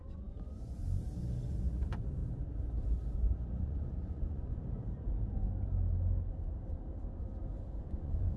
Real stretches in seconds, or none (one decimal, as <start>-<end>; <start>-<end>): 0.8-1.5; 2.2-3.6; 4.6-7.8